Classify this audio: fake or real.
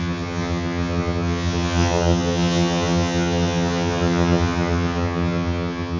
fake